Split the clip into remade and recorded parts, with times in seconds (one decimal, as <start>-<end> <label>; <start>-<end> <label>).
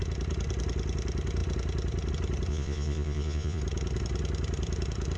0.0-2.5 recorded; 2.5-3.6 remade; 3.6-5.2 recorded